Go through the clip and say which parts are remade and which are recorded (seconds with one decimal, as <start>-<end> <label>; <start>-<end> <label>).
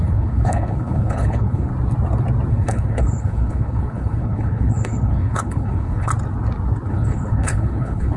0.0-1.7 remade; 1.7-2.5 recorded; 2.5-6.1 remade; 6.1-6.9 recorded; 6.9-8.2 remade